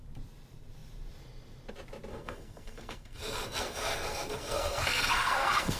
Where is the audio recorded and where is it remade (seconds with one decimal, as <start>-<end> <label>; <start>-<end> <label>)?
0.0-2.1 recorded; 2.1-5.8 remade

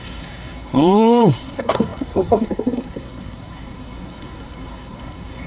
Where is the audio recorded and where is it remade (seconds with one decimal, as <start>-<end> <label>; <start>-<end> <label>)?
0.0-5.5 remade

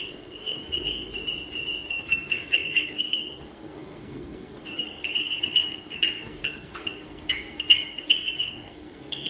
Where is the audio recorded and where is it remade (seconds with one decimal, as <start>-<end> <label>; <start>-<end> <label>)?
0.0-1.1 remade; 1.1-1.9 recorded; 1.9-9.3 remade

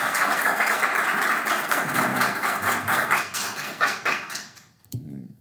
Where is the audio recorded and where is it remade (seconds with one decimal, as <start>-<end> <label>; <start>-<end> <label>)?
0.0-0.9 remade; 0.9-1.5 recorded; 1.5-5.4 remade

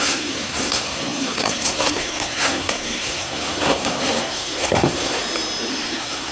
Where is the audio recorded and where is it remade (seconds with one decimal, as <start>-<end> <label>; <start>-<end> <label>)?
0.0-5.2 remade; 5.2-5.7 recorded; 5.7-6.3 remade

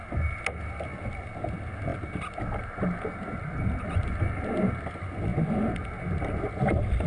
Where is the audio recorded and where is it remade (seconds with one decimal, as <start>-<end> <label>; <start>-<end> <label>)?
0.0-7.1 recorded

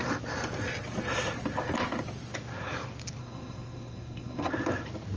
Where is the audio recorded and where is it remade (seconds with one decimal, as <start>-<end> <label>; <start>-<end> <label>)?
0.0-3.2 recorded; 3.2-4.5 remade; 4.5-5.2 recorded